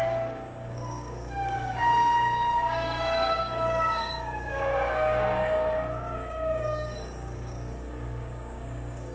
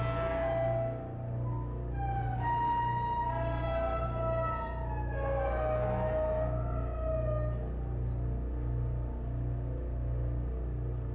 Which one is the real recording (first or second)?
second